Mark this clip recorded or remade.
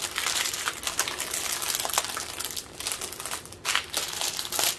recorded